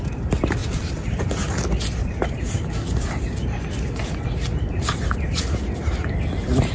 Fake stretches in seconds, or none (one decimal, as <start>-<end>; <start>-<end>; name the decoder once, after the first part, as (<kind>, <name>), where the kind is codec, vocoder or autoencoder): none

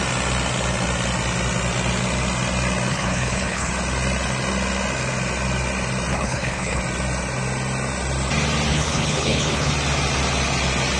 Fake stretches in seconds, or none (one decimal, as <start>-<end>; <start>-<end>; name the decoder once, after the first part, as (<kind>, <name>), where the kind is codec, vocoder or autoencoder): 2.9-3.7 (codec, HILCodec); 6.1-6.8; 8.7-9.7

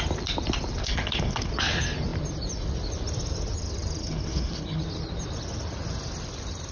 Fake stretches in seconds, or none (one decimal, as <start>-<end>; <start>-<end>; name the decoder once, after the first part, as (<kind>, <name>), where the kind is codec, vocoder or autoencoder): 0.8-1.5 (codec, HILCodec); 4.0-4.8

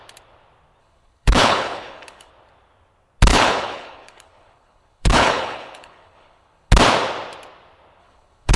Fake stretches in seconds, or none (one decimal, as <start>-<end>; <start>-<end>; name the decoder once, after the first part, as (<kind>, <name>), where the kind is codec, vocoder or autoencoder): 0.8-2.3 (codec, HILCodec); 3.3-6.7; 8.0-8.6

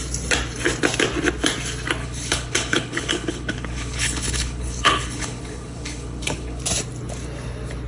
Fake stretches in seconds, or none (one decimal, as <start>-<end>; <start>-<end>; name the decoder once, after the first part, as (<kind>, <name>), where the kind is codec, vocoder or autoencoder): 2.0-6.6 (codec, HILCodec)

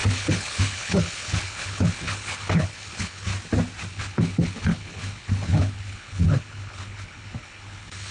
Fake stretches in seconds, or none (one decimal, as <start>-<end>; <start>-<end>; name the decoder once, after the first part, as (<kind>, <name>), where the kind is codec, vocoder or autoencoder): 0.0-3.3 (codec, HILCodec); 3.9-8.1

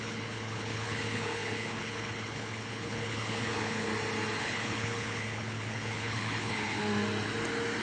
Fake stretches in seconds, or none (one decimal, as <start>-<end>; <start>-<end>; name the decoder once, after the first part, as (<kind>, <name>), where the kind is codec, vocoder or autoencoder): 0.0-3.9 (codec, HILCodec); 4.4-6.8